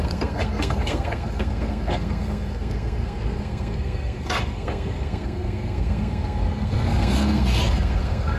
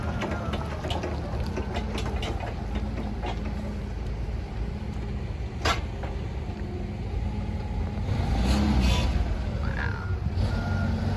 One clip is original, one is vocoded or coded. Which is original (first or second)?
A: second